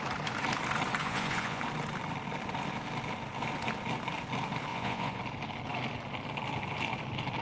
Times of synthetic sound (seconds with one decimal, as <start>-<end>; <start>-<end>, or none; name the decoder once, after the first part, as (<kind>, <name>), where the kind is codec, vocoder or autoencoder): 1.0-1.6 (vocoder, Vocos); 4.7-5.2